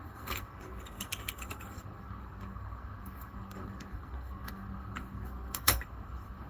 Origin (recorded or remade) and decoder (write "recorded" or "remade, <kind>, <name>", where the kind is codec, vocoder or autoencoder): remade, codec, SNAC